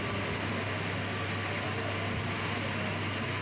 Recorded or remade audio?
recorded